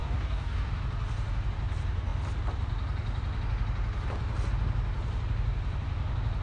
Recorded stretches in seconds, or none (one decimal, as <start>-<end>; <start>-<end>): 0.8-6.4